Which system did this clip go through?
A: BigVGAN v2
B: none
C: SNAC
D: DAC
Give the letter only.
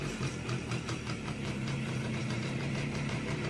A